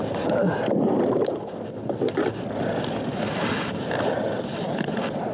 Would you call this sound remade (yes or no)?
no